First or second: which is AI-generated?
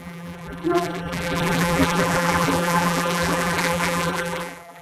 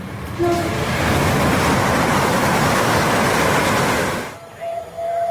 first